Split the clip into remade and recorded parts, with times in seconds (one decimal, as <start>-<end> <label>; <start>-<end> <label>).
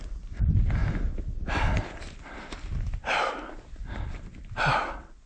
0.0-5.3 recorded